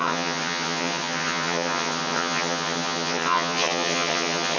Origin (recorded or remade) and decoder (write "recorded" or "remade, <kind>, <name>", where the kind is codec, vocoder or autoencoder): remade, vocoder, HiFi-GAN